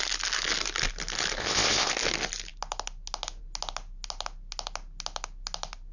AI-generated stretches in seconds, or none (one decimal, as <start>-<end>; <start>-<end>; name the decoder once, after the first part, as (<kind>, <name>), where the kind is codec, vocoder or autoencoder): 1.4-1.9 (codec, ZipCodec)